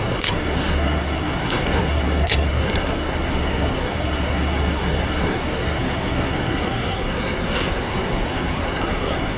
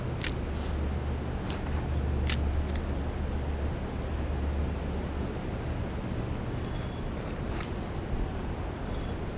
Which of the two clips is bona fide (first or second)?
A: second